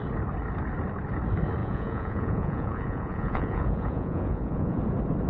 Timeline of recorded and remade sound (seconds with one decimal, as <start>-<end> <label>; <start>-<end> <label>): 0.0-1.6 recorded; 1.6-4.8 remade; 4.8-5.3 recorded